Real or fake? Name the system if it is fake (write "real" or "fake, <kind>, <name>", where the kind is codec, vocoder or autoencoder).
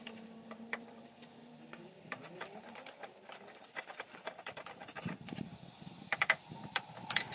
fake, vocoder, BigVGAN v2